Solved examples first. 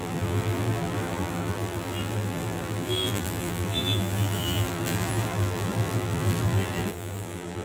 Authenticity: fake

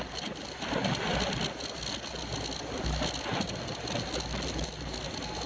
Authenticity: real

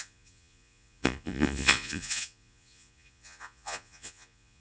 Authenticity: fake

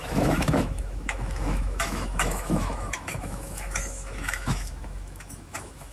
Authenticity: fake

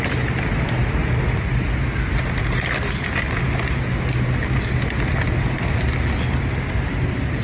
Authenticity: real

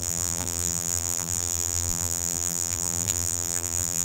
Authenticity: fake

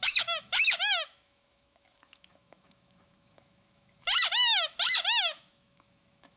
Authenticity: fake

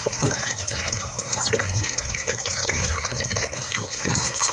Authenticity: fake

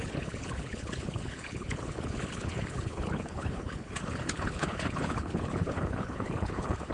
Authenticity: fake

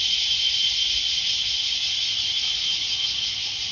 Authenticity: real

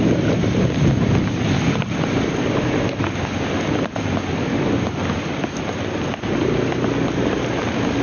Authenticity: real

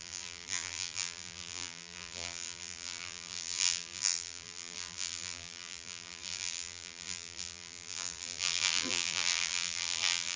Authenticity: fake